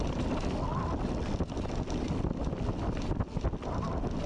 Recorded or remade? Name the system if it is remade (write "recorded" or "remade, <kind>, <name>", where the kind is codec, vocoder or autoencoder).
recorded